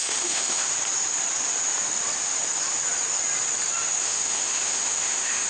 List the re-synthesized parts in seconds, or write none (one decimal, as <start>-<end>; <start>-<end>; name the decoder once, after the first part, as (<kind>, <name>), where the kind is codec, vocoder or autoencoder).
0.0-0.7 (autoencoder, DAC-VAE); 4.0-5.5